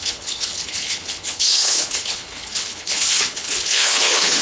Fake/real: fake